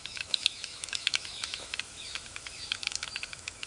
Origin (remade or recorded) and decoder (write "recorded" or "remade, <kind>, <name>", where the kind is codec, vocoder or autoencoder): remade, autoencoder, DAC-VAE